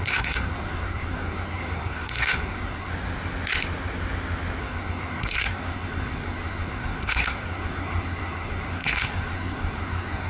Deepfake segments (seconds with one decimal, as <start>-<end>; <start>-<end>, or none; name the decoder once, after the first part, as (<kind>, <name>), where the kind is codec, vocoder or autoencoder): 0.0-2.9 (codec, SNAC); 4.6-10.3